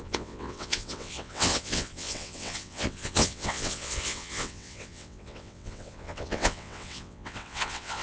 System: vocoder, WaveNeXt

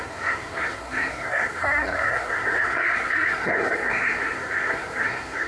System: codec, SNAC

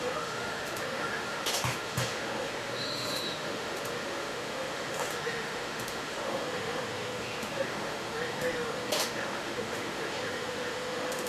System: autoencoder, DAC-VAE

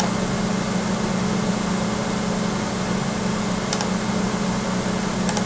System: none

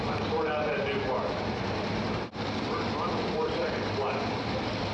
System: none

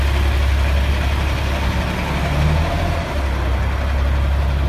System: none